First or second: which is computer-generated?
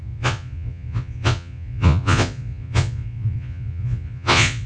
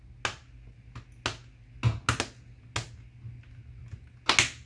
first